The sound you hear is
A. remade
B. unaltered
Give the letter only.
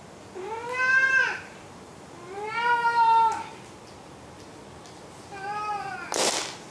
B